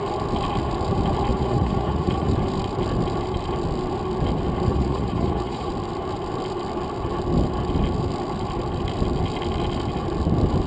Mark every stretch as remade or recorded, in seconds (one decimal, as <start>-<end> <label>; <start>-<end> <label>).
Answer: 0.0-1.3 recorded; 1.3-2.3 remade; 2.3-4.7 recorded; 4.7-5.7 remade; 5.7-10.7 recorded